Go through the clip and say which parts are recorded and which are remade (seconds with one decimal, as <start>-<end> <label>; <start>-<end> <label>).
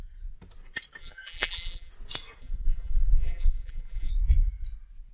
0.0-1.0 recorded; 1.0-1.9 remade; 1.9-2.4 recorded; 2.4-4.1 remade; 4.1-5.1 recorded